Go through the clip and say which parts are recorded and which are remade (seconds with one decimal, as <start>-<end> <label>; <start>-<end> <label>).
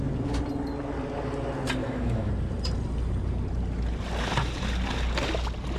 0.0-1.8 recorded; 1.8-2.3 remade; 2.3-5.8 recorded